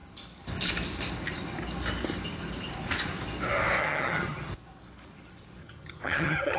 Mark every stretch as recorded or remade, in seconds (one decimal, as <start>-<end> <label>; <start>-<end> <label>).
0.0-3.8 recorded; 3.8-4.5 remade; 4.5-5.6 recorded; 5.6-6.6 remade